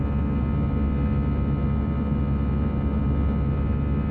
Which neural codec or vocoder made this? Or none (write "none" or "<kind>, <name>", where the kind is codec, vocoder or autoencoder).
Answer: none